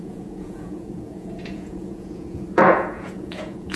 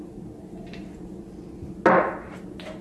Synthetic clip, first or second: first